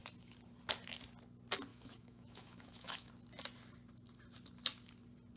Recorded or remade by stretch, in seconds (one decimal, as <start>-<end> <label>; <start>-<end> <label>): 0.0-1.7 recorded; 1.7-3.1 remade; 3.1-5.4 recorded